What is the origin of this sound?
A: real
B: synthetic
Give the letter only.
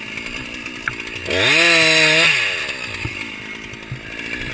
A